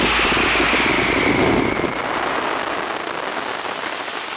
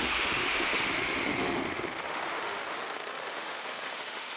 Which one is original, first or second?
first